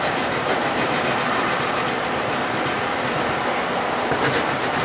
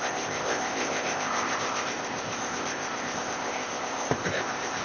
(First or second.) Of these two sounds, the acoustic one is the first